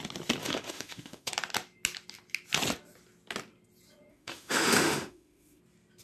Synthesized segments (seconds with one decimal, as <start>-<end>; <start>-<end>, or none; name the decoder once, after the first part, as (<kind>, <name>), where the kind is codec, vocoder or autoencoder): 0.4-1.3 (autoencoder, DAC-VAE); 4.1-5.6